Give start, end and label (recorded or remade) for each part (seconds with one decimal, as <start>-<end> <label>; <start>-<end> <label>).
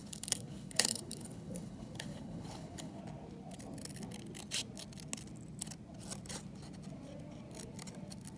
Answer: 0.0-3.0 remade; 3.0-8.4 recorded